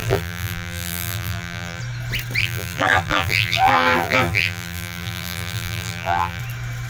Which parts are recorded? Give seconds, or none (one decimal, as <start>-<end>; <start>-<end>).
1.8-2.4; 6.4-6.9